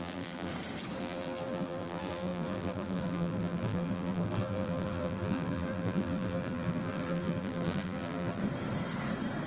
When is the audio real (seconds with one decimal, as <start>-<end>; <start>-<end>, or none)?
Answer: 0.5-1.0; 8.4-9.5